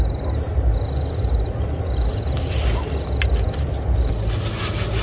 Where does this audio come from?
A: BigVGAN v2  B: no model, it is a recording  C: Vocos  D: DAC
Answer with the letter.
B